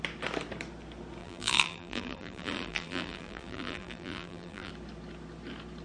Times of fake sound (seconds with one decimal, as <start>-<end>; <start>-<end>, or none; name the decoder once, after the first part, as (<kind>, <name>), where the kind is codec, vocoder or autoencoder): 1.2-4.7 (vocoder, BigVGAN v2)